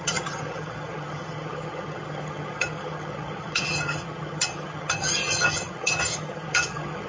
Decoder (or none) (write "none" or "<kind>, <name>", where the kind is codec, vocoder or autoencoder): vocoder, HiFi-GAN